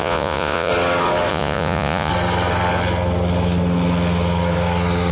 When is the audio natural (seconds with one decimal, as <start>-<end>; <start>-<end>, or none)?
0.7-1.3; 2.1-5.1